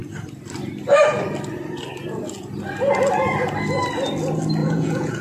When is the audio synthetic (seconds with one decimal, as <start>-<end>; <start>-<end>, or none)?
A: 4.6-5.2